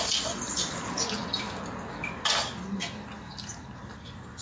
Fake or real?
real